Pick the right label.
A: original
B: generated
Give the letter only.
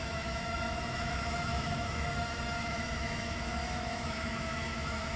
B